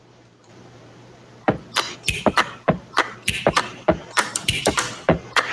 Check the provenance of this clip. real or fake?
fake